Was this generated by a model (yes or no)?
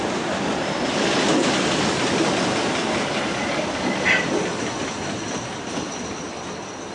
no